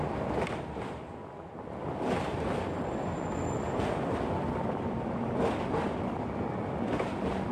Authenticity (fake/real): real